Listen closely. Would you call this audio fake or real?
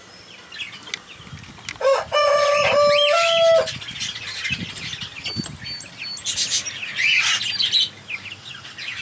real